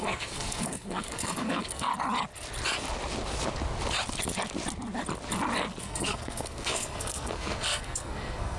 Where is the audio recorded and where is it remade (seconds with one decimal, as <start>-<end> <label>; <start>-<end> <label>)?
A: 0.0-1.9 remade; 1.9-5.8 recorded; 5.8-8.6 remade